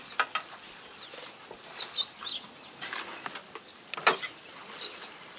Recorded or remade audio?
recorded